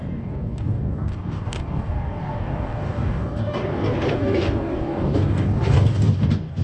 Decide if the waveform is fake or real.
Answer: fake